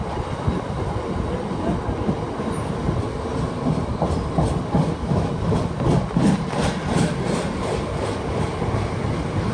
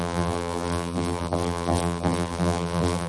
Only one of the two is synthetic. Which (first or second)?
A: second